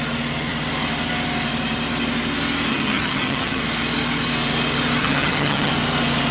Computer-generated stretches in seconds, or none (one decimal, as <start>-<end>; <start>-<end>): 2.7-3.6; 5.0-5.7